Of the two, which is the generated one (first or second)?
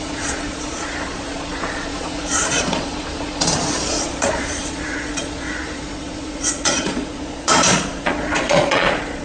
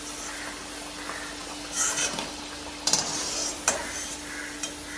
first